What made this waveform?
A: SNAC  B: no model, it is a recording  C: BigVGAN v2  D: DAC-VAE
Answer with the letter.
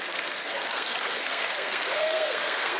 A